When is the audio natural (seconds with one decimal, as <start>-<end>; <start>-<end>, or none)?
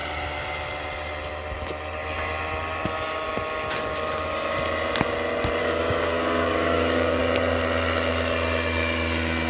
0.0-5.6; 7.2-9.5